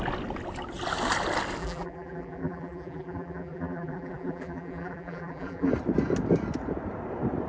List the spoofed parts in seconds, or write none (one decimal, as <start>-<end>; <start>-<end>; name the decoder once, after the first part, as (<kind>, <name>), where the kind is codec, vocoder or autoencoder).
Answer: 1.6-5.7 (vocoder, BigVGAN v2)